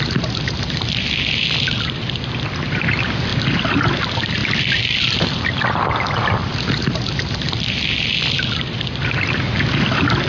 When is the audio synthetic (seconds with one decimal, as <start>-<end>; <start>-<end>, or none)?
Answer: 3.3-4.0; 4.4-5.0

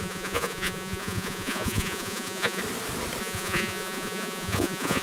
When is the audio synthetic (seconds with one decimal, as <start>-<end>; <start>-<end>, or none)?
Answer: 0.0-2.6; 3.2-5.0